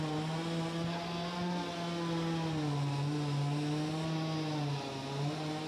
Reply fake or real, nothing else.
real